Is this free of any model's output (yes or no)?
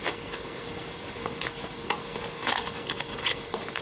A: no